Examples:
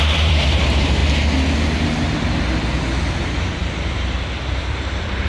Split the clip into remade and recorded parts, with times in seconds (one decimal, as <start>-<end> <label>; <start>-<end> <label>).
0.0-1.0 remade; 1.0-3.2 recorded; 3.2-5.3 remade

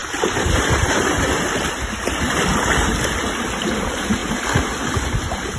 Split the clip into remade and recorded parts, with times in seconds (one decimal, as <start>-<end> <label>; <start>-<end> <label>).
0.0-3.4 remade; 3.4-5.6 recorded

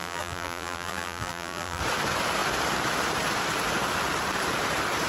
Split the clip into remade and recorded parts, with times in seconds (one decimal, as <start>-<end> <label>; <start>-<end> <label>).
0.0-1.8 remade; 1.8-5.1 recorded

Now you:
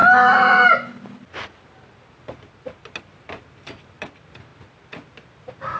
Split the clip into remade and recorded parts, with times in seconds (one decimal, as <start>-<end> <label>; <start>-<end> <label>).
0.0-5.8 recorded